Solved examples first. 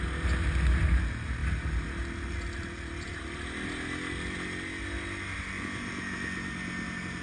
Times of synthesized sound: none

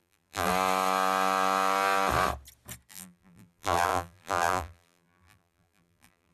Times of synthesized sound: 0.0-0.5; 2.9-6.3

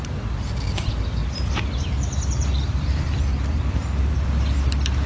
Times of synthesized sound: 1.2-4.1

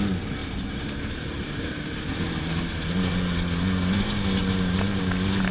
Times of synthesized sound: 0.4-3.1; 4.4-5.0

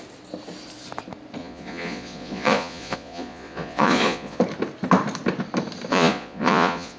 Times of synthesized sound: 1.4-4.4; 5.9-7.0

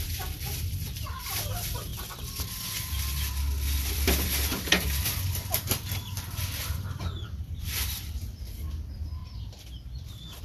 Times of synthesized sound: 0.0-1.9; 3.9-9.2